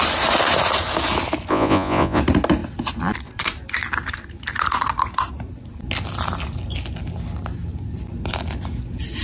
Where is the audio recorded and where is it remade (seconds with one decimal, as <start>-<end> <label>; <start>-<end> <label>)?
0.0-1.5 recorded; 1.5-2.2 remade; 2.2-9.2 recorded